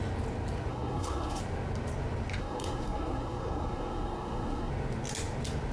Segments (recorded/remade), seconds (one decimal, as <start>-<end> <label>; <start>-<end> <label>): 0.0-0.7 recorded; 0.7-1.4 remade; 1.4-2.4 recorded; 2.4-4.7 remade; 4.7-5.7 recorded